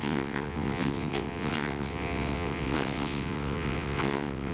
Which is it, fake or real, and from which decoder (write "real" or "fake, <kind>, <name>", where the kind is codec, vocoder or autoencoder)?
fake, vocoder, WaveNeXt